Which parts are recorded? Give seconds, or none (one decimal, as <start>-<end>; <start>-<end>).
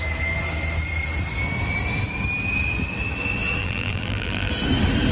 0.0-3.6; 4.5-5.1